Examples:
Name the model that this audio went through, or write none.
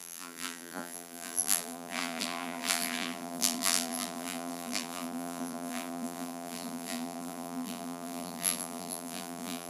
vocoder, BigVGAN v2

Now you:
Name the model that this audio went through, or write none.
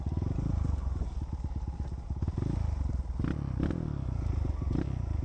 none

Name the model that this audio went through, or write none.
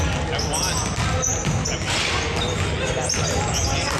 none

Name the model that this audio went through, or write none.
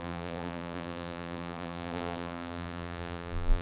vocoder, BigVGAN v2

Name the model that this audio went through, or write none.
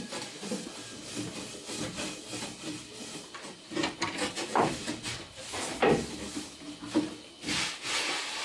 none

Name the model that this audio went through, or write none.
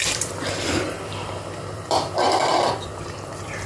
vocoder, BigVGAN v2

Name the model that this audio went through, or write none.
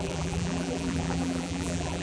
vocoder, BigVGAN v2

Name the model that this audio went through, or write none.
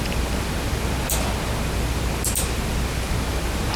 vocoder, BigVGAN v2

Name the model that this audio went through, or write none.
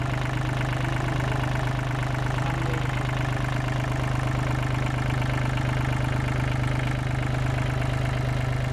none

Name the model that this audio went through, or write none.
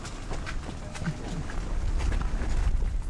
none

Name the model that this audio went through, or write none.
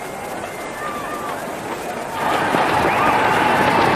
none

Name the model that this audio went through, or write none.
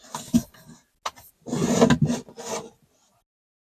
none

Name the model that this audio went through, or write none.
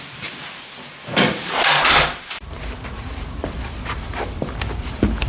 vocoder, BigVGAN v2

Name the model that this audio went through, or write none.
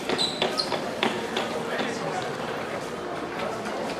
vocoder, BigVGAN v2